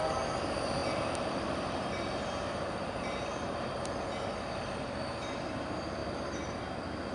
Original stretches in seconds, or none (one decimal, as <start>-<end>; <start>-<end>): 0.0-0.8; 1.8-2.2; 3.7-7.1